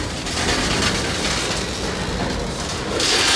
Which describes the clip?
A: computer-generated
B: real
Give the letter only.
B